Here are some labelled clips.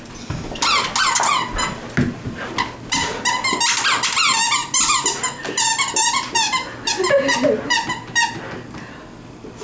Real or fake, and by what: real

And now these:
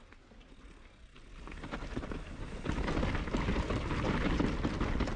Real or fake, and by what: real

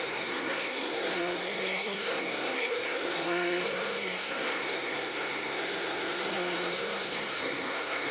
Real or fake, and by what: fake, codec, SNAC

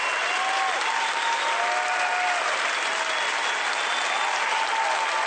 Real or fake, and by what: real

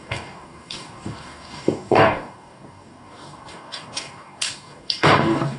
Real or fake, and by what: fake, codec, DAC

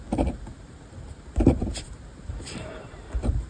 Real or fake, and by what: fake, vocoder, BigVGAN v2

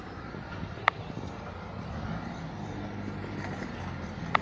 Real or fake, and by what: real